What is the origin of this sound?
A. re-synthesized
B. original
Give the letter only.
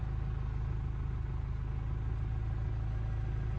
B